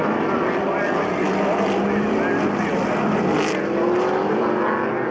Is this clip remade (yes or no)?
no